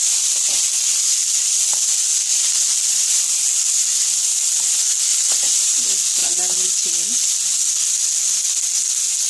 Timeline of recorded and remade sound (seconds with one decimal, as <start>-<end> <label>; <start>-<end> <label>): 0.0-2.3 recorded; 2.3-3.2 remade; 3.2-5.1 recorded; 5.1-5.8 remade; 5.8-9.3 recorded